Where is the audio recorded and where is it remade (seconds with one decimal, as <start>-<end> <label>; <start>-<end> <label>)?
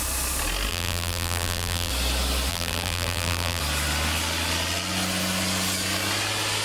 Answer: 0.0-0.7 recorded; 0.7-1.9 remade; 1.9-2.5 recorded; 2.5-3.6 remade; 3.6-6.6 recorded